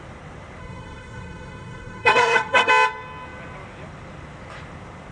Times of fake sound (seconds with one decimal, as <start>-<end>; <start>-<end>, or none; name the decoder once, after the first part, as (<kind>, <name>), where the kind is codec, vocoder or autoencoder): 0.6-2.7 (codec, SNAC)